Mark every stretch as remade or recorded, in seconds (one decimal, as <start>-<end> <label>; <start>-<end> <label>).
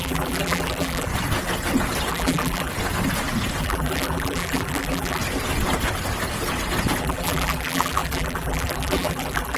0.0-1.1 remade; 1.1-2.1 recorded; 2.1-2.7 remade; 2.7-3.6 recorded; 3.6-5.2 remade; 5.2-7.0 recorded; 7.0-9.6 remade